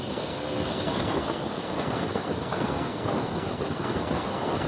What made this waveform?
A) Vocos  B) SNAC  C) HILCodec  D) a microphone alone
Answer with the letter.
B